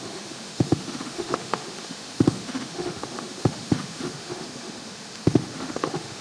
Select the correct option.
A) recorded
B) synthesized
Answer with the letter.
B